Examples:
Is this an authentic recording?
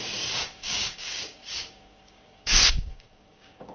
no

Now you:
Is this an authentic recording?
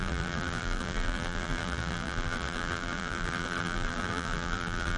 no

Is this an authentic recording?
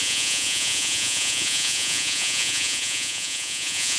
no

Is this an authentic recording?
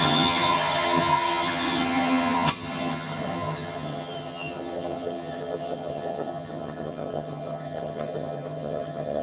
no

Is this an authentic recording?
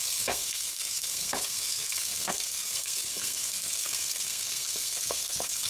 no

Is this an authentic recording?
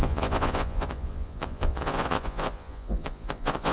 no